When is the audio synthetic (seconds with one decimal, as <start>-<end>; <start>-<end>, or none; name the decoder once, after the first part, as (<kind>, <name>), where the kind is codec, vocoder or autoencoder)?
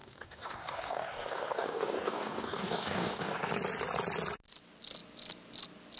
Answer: 0.0-3.5 (codec, DAC)